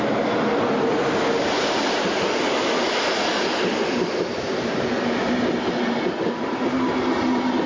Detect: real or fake real